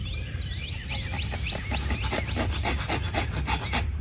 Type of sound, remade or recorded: recorded